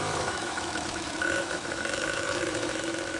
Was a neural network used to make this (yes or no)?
yes